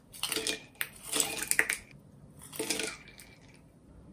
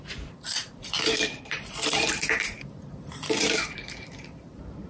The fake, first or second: second